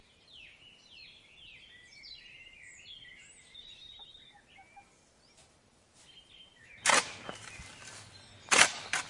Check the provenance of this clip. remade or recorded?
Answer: recorded